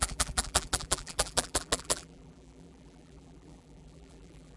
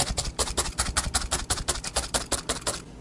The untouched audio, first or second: second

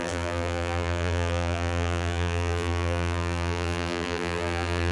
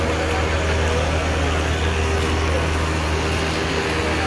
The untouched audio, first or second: second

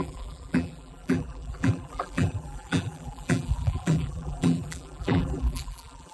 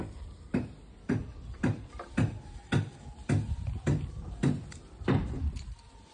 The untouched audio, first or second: second